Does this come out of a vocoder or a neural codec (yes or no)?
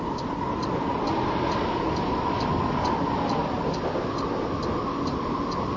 no